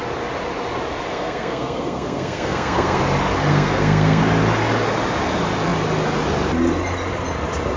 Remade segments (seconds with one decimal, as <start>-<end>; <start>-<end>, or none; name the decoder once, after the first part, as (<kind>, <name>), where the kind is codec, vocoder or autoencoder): 1.1-3.0 (codec, SNAC); 3.5-4.2